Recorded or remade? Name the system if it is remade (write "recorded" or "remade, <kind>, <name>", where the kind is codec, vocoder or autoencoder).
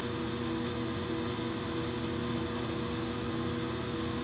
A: recorded